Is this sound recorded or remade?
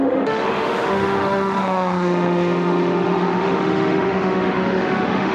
remade